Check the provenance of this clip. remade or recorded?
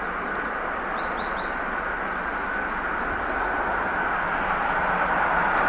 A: recorded